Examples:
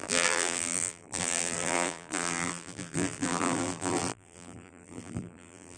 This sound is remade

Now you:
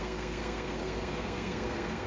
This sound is remade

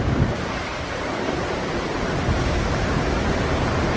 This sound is remade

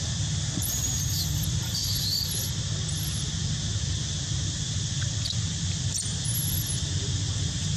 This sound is remade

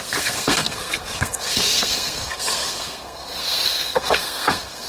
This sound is remade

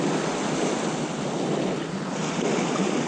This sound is recorded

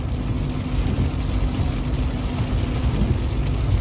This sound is recorded